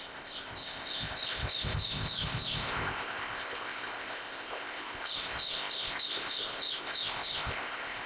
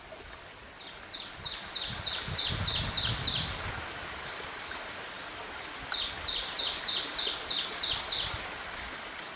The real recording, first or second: second